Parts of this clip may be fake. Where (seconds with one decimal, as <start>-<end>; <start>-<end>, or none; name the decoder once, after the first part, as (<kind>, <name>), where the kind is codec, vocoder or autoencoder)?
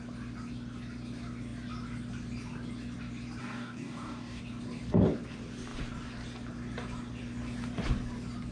3.4-4.4 (codec, DAC)